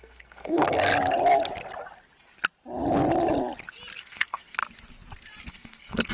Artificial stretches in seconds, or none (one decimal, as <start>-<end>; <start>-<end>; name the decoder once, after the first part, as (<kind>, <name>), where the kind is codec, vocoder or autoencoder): 0.0-0.9 (codec, SNAC); 4.0-4.6; 5.5-6.1